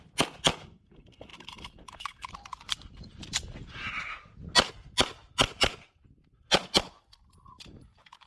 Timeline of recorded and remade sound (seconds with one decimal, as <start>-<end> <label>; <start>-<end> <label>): 0.0-8.3 recorded